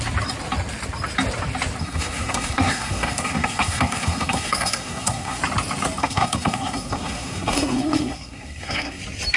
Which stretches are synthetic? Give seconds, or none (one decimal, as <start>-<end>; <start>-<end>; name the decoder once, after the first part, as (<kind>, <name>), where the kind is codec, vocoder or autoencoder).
1.8-5.4 (codec, SNAC); 6.0-9.0